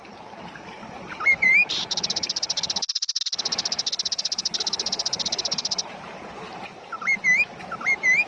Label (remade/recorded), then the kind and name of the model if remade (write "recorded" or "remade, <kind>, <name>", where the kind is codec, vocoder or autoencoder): remade, vocoder, BigVGAN v2